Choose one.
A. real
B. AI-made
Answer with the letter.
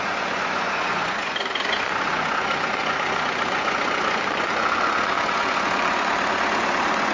B